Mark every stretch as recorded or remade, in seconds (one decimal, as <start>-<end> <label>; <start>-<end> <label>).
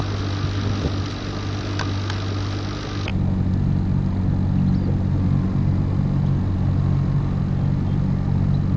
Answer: 0.0-8.8 recorded